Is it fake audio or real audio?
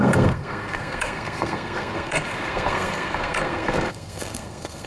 fake